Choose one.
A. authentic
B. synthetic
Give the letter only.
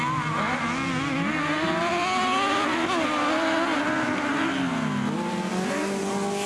A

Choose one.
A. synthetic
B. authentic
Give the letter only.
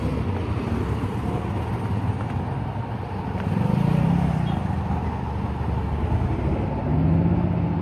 B